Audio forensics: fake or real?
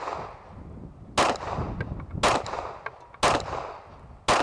real